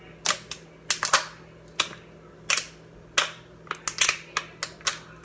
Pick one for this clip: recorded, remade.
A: recorded